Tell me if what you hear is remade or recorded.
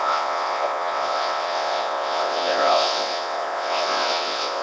remade